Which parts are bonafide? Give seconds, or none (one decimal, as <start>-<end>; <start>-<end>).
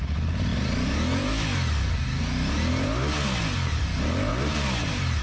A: 0.0-5.2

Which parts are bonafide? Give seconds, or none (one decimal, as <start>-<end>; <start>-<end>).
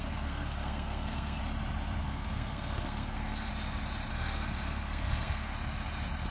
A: 1.4-2.0; 3.5-4.1; 5.5-6.3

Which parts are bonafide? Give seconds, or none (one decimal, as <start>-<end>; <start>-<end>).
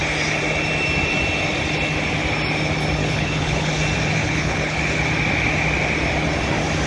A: 0.0-3.0; 3.7-4.2; 4.8-6.9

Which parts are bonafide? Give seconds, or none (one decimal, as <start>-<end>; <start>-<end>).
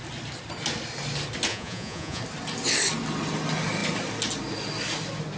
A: 0.0-1.5; 2.2-5.4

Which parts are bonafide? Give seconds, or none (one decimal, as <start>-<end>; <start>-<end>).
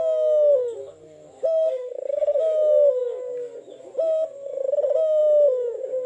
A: 0.0-0.8; 2.4-6.1